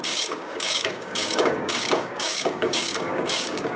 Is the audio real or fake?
fake